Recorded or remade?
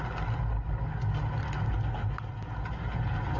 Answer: recorded